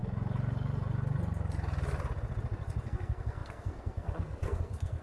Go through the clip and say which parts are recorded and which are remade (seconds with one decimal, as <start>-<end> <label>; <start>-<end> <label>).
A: 0.0-2.8 recorded; 2.8-5.0 remade